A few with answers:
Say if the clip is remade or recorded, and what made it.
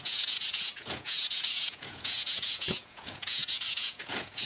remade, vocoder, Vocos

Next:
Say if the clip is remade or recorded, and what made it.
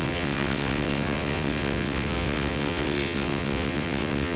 remade, vocoder, WaveNeXt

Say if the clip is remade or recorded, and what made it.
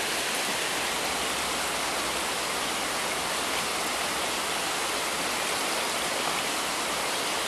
recorded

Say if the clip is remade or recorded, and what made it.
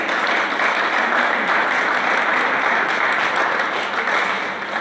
recorded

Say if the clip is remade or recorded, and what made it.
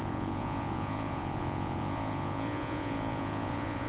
remade, vocoder, Vocos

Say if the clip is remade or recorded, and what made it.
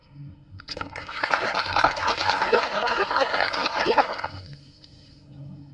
remade, codec, SNAC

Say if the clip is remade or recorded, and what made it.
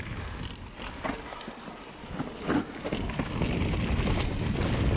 recorded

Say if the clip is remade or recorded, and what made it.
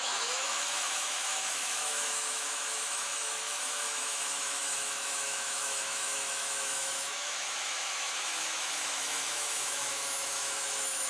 remade, autoencoder, DAC-VAE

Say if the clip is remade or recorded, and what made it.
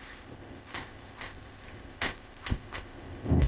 remade, codec, ZipCodec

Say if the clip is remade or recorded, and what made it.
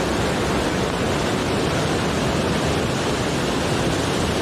recorded